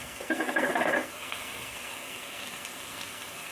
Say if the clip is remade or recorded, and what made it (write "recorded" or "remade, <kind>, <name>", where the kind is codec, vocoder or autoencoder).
remade, codec, SNAC